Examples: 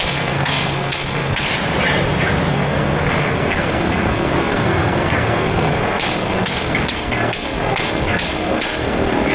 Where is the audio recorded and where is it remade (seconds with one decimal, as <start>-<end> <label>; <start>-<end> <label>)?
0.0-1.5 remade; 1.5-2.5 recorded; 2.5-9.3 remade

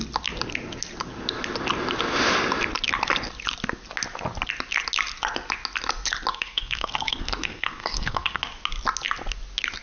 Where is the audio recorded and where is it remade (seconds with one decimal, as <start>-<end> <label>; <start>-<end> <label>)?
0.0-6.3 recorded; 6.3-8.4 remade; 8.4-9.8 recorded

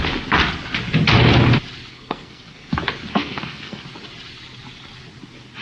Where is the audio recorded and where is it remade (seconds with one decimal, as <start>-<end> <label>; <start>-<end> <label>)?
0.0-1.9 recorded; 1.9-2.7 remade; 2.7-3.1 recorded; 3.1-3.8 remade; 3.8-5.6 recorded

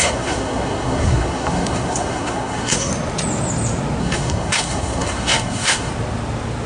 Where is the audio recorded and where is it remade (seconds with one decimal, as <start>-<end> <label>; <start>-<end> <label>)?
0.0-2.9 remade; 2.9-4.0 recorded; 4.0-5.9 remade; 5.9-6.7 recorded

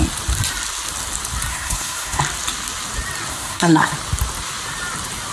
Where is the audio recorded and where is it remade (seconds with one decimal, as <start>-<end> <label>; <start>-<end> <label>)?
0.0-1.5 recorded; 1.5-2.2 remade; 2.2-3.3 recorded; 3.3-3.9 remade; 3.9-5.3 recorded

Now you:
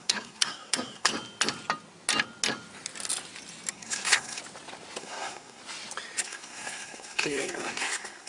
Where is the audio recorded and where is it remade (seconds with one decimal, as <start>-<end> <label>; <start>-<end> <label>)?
0.0-1.1 remade; 1.1-3.7 recorded; 3.7-4.4 remade; 4.4-5.0 recorded; 5.0-5.6 remade; 5.6-6.2 recorded; 6.2-8.3 remade

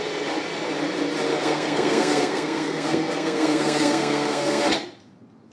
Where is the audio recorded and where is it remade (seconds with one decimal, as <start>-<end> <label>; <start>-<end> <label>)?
0.0-1.3 recorded; 1.3-4.6 remade; 4.6-5.5 recorded

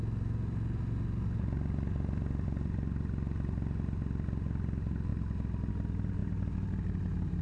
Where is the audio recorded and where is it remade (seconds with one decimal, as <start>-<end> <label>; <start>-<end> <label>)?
0.0-7.4 recorded